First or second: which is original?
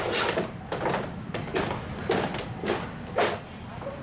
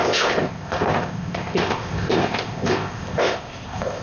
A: first